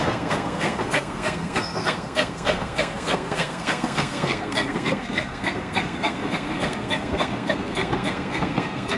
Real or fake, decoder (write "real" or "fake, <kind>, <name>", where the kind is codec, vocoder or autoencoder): fake, codec, SNAC